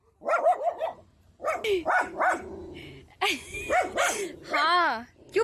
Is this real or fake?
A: real